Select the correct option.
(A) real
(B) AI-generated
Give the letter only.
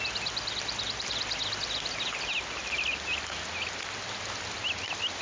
A